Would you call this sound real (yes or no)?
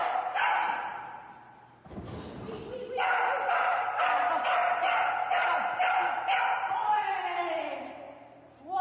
yes